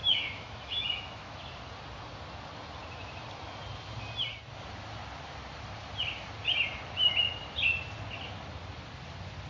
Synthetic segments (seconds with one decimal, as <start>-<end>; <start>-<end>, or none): 0.0-1.4